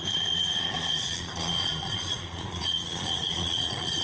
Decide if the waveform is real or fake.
fake